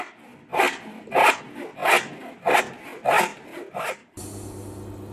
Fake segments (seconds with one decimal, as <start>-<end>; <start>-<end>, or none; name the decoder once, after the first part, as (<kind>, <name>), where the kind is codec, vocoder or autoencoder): none